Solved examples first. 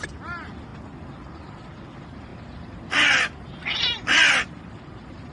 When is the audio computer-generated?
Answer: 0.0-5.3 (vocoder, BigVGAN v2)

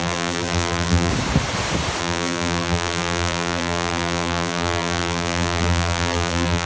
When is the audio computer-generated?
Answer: 0.0-1.1 (vocoder, BigVGAN v2); 2.0-6.7

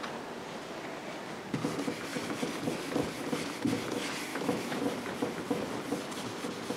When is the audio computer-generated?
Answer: 4.3-4.8 (autoencoder, DAC-VAE)